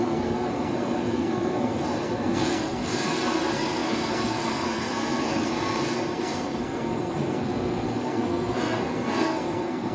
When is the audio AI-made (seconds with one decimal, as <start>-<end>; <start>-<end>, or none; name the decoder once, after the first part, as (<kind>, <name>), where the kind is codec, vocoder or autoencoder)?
0.0-9.9 (codec, SNAC)